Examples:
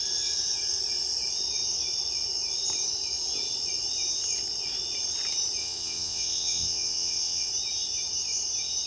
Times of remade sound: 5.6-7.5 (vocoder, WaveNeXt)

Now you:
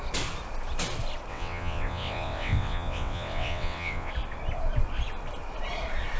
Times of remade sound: 1.3-4.1 (vocoder, WaveNeXt)